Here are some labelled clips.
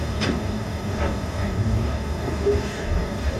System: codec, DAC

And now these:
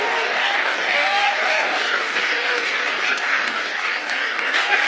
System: codec, DAC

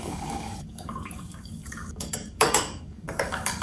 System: codec, DAC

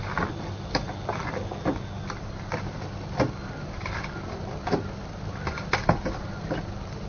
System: none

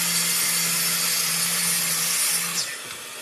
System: none